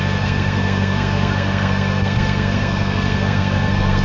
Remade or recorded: remade